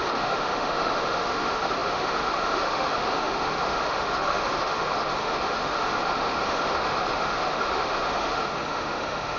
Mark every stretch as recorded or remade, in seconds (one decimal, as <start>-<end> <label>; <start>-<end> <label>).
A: 0.0-9.4 remade